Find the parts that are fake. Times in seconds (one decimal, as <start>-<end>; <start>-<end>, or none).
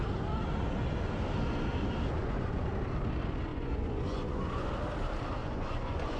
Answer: 2.2-2.7; 3.5-4.7; 5.4-6.2